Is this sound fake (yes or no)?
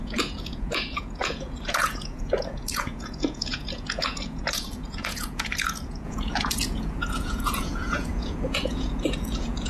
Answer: yes